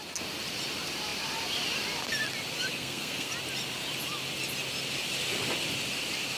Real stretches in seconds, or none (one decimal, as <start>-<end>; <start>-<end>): 0.0-2.8; 3.3-6.4